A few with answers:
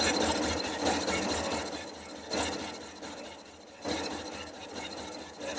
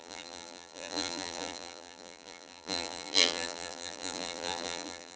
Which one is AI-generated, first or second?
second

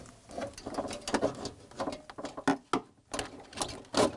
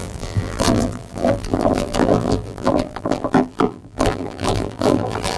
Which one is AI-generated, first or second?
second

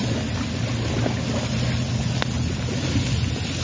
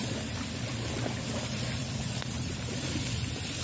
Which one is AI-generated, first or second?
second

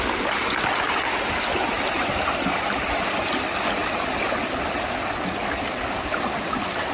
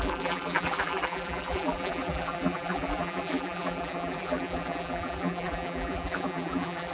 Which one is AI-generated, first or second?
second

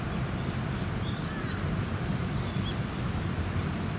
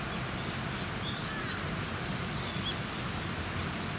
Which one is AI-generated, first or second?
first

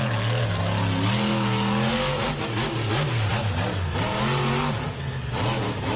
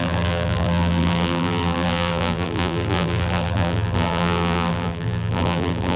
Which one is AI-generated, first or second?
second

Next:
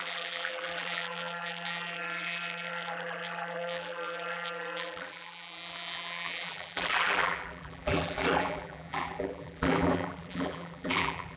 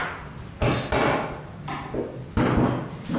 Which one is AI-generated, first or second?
first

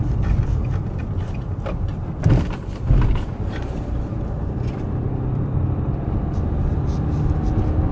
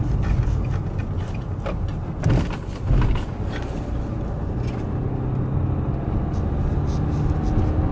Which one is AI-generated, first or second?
first